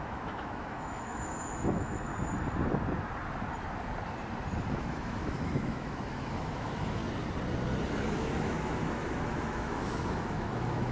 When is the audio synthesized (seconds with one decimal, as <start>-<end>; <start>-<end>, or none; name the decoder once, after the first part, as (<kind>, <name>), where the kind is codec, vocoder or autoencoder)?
0.0-2.1 (autoencoder, DAC-VAE); 4.7-7.0; 8.1-10.9

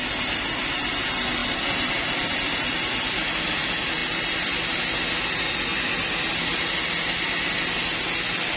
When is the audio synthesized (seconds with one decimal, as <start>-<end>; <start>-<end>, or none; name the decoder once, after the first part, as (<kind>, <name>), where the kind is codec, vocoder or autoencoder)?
none

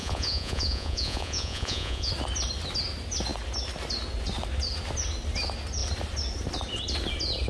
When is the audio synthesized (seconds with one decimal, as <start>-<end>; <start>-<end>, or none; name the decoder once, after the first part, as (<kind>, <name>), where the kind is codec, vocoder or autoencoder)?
0.0-2.1 (vocoder, Vocos)

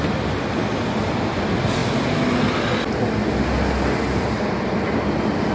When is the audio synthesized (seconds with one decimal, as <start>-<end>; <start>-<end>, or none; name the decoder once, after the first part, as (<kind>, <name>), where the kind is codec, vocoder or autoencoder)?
none

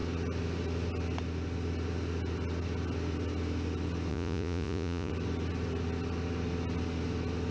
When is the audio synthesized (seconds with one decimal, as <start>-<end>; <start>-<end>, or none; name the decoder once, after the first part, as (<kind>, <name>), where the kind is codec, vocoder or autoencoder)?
4.1-5.1 (vocoder, Vocos)

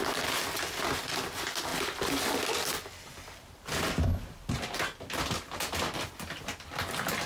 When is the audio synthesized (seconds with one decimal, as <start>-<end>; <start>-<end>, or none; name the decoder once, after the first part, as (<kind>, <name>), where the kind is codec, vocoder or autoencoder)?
none

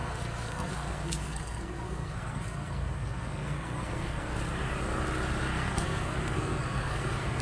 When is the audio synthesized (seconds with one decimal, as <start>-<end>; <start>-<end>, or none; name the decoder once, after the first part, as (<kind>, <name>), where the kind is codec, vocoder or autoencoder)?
0.0-4.4 (codec, SNAC); 5.5-7.4

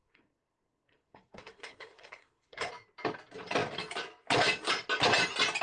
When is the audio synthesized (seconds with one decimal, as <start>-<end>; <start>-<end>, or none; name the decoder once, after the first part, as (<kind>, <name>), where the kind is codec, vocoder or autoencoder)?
0.0-2.7 (codec, SNAC)